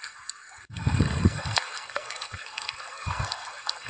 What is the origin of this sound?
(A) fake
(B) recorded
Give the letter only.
A